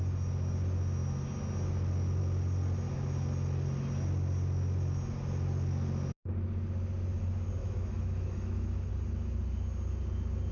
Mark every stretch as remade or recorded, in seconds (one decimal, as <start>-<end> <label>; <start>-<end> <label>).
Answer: 0.0-7.6 recorded; 7.6-8.9 remade; 8.9-10.5 recorded